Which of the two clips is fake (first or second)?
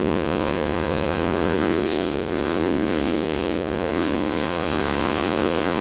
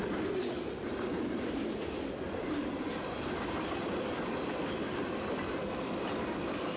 first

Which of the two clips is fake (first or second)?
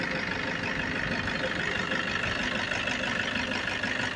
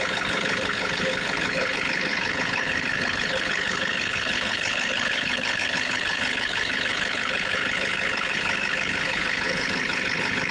second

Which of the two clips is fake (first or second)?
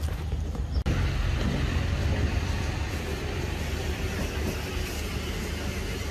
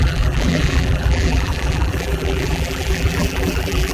second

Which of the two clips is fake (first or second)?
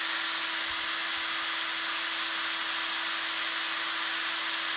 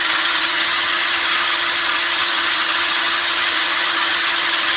second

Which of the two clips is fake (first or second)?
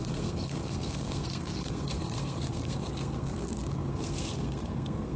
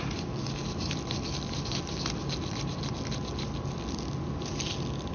first